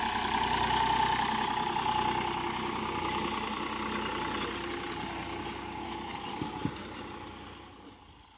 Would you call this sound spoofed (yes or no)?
no